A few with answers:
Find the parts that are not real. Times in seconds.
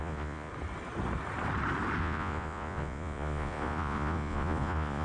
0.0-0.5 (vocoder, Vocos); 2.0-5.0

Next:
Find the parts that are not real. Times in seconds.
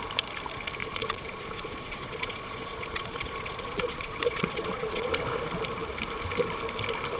0.8-5.1 (vocoder, Vocos)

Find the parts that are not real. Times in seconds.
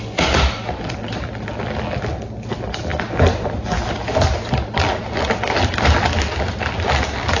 none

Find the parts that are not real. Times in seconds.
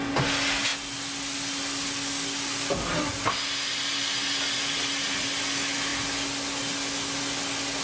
none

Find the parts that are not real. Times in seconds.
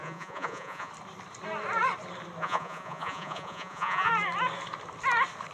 0.0-0.9 (vocoder, Vocos); 2.4-4.1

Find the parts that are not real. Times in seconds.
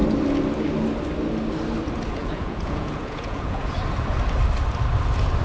2.2-3.7 (vocoder, Vocos)